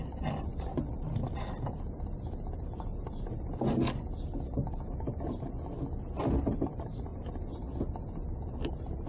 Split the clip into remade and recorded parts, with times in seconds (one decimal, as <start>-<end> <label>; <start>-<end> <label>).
0.0-9.1 recorded